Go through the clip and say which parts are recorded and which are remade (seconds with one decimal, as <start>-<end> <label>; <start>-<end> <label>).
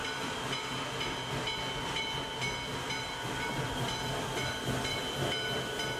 0.0-6.0 recorded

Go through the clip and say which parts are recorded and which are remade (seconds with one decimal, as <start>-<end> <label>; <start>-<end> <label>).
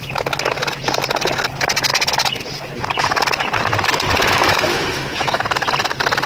0.0-4.2 recorded; 4.2-5.4 remade; 5.4-6.3 recorded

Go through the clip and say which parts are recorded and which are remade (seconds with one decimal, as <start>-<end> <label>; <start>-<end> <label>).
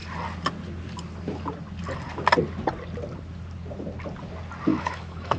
0.0-4.7 recorded; 4.7-5.4 remade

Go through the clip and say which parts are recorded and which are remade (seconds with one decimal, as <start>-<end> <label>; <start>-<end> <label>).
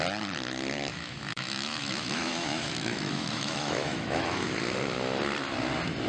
0.0-0.9 recorded; 0.9-4.6 remade; 4.6-6.1 recorded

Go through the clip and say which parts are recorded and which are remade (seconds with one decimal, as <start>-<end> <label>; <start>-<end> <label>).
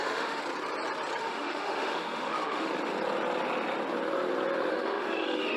0.0-0.4 remade; 0.4-1.2 recorded; 1.2-2.7 remade; 2.7-4.7 recorded; 4.7-5.6 remade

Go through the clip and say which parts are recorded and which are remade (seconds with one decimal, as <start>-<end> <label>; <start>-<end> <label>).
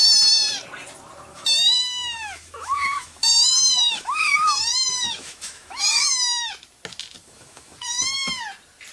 0.0-1.3 recorded; 1.3-6.5 remade; 6.5-7.2 recorded; 7.2-8.4 remade; 8.4-8.9 recorded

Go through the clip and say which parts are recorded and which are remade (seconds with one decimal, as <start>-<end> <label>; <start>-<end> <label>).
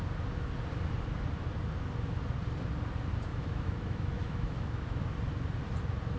0.0-3.3 recorded; 3.3-5.0 remade; 5.0-6.2 recorded